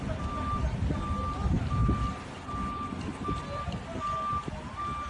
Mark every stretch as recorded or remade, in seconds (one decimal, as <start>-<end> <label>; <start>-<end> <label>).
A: 0.0-5.1 recorded